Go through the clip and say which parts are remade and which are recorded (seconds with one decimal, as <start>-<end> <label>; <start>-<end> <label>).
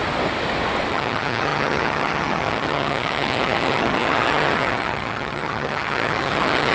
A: 0.0-0.9 recorded; 0.9-6.7 remade